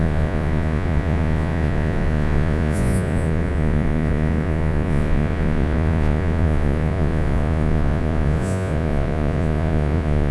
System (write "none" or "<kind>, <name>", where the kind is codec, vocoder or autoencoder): vocoder, Vocos